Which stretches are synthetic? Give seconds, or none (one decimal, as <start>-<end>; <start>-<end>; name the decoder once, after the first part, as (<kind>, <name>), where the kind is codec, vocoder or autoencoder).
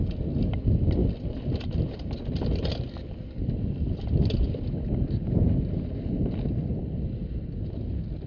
none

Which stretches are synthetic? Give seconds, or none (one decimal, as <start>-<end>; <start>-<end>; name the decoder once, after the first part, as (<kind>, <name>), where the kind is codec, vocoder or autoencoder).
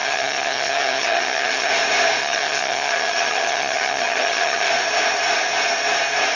0.0-1.7 (vocoder, HiFi-GAN); 2.2-4.7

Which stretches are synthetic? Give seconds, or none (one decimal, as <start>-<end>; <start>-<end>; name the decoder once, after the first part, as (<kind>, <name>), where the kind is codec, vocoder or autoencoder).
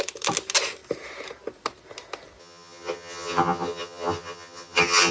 2.4-5.1 (vocoder, HiFi-GAN)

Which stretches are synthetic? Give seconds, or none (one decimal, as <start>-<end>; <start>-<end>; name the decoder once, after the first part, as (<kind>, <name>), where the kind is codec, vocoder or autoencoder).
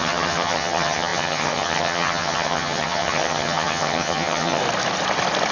0.0-4.6 (vocoder, HiFi-GAN)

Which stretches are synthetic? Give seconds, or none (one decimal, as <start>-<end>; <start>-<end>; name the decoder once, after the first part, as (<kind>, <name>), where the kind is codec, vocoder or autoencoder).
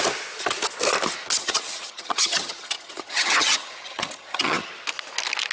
1.4-4.7 (vocoder, HiFi-GAN)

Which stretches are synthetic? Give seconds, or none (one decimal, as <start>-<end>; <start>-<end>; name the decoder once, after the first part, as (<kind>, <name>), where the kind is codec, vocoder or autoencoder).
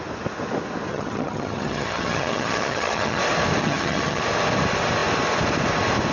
0.9-3.2 (vocoder, HiFi-GAN); 3.6-4.2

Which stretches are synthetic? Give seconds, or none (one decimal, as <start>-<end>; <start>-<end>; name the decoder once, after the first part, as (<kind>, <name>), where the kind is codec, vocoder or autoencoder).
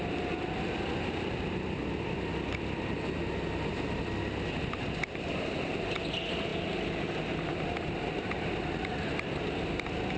none